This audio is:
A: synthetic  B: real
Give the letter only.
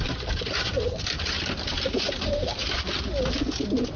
B